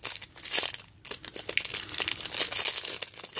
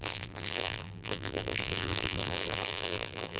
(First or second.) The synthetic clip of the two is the second